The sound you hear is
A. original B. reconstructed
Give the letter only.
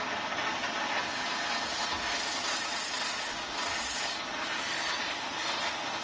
A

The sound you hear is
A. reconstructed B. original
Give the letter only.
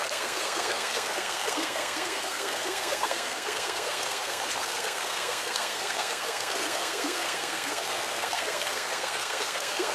A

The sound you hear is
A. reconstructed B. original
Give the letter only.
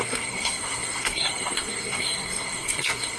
A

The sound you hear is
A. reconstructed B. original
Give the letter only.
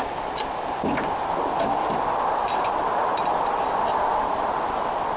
A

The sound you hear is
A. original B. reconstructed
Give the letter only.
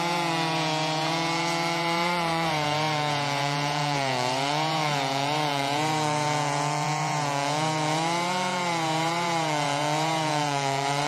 B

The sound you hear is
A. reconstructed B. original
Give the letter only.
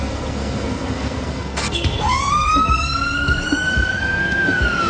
A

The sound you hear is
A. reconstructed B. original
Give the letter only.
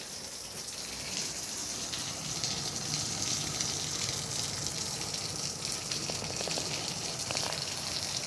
B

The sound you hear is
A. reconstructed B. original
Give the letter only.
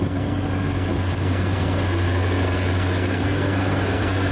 A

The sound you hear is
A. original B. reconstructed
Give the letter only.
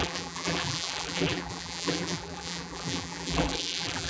B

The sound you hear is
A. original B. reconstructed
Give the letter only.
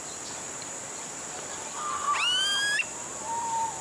B